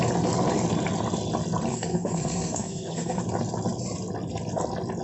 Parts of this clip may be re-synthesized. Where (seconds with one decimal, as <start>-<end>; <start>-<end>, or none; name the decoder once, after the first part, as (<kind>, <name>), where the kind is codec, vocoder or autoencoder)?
1.7-3.2 (codec, SNAC)